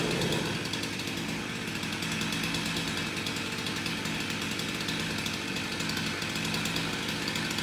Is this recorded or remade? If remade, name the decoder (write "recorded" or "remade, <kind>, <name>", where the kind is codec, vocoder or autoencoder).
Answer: recorded